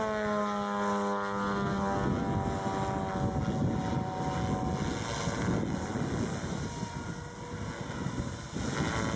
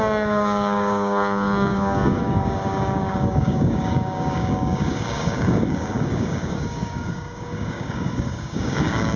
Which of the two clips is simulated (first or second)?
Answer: second